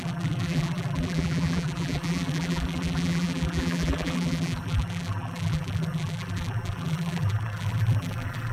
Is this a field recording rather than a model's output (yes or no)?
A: no